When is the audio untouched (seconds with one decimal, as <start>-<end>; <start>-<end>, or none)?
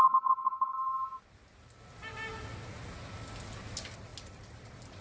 0.0-5.0